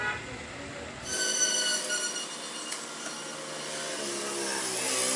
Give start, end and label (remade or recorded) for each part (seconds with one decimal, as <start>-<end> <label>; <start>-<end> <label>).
0.0-5.2 recorded